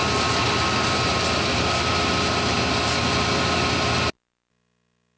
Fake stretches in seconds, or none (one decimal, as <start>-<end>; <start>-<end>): none